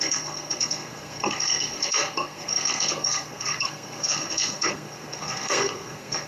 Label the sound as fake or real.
fake